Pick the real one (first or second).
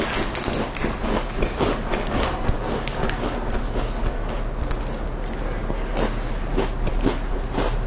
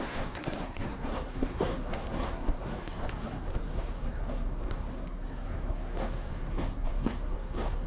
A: first